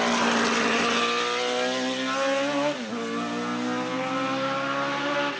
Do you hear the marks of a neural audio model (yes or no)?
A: no